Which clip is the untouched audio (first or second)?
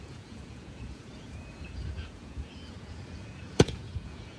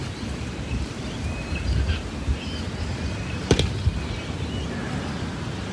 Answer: second